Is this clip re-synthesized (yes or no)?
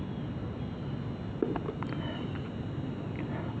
no